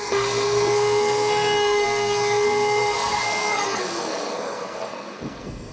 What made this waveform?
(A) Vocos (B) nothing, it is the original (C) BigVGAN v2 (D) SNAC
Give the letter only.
D